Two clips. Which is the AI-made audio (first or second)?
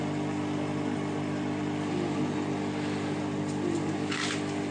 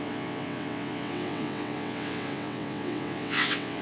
second